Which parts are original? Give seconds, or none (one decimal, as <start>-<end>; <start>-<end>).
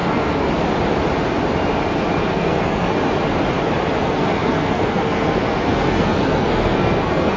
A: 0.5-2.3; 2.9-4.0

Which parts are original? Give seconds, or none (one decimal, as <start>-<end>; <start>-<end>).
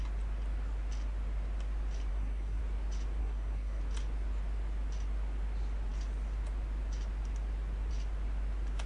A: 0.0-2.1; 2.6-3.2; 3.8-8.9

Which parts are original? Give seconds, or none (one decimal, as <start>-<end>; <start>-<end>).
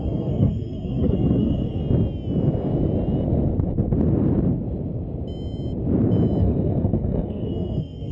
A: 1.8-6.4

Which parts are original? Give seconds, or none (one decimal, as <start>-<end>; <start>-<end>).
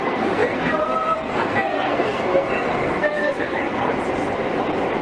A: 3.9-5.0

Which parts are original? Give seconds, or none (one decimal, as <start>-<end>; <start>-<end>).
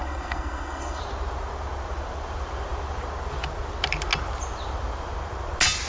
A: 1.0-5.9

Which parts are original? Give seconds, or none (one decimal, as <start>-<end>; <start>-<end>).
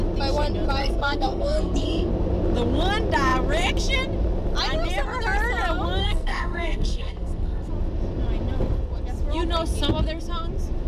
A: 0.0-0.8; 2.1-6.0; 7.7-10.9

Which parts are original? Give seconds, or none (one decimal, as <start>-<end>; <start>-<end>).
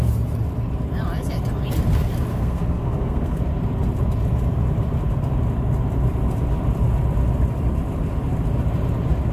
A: 0.0-2.3; 3.4-9.3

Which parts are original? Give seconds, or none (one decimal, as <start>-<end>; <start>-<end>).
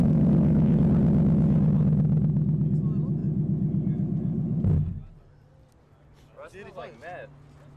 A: 0.8-7.8